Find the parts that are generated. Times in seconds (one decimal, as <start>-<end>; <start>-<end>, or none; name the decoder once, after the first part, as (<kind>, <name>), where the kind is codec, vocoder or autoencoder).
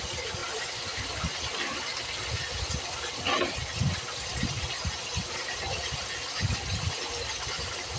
none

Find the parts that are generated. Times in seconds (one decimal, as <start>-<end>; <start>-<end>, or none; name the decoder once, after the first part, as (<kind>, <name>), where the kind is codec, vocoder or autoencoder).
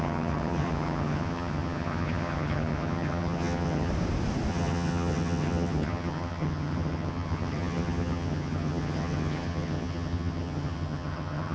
0.0-3.9 (vocoder, HiFi-GAN); 4.5-11.5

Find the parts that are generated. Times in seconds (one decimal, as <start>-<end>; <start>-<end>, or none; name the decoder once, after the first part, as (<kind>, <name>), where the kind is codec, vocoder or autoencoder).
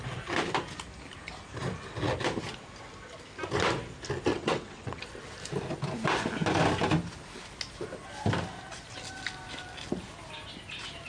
4.3-5.0 (vocoder, WaveNeXt)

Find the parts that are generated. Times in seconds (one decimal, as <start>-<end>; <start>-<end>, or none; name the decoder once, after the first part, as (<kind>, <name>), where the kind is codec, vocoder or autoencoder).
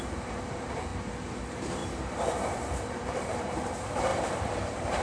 0.0-0.9 (vocoder, BigVGAN v2); 1.4-5.0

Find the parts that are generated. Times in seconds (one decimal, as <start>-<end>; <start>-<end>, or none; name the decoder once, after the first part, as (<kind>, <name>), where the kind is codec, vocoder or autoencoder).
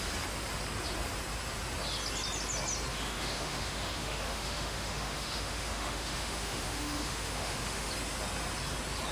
2.9-7.9 (autoencoder, DAC-VAE)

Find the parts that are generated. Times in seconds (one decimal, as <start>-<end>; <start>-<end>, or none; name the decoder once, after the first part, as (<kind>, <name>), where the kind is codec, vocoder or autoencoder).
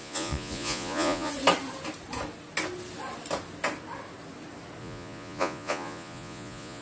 0.0-1.3 (vocoder, Vocos); 4.8-6.8